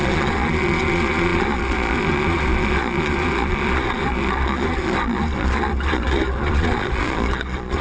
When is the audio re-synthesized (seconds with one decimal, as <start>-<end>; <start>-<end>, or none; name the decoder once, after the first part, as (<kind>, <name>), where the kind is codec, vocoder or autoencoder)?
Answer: 0.0-7.8 (vocoder, Vocos)